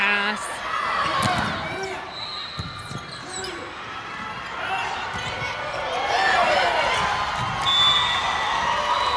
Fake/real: real